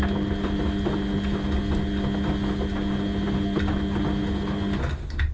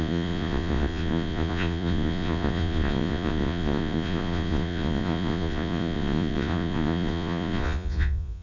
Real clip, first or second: first